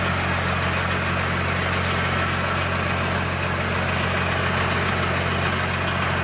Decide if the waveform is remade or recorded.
recorded